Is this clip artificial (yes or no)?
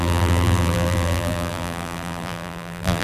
yes